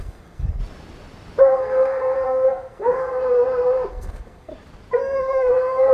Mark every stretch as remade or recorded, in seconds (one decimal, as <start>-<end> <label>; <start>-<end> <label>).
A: 0.0-0.6 remade; 0.6-1.4 recorded; 1.4-3.2 remade; 3.2-3.9 recorded; 3.9-4.5 remade; 4.5-5.0 recorded; 5.0-5.9 remade